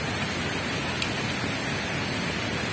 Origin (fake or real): real